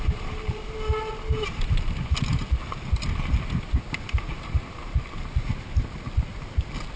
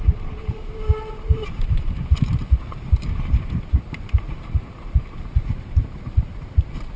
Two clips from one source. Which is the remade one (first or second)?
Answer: second